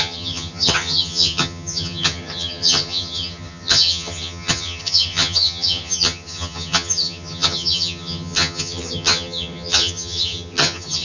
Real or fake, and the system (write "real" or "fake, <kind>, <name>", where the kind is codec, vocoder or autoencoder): fake, vocoder, HiFi-GAN